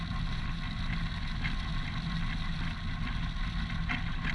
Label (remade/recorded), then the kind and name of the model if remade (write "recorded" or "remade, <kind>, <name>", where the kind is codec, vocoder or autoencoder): recorded